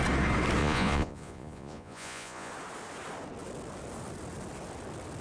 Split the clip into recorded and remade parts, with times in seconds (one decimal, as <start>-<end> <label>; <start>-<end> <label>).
0.0-0.6 recorded; 0.6-2.5 remade; 2.5-5.2 recorded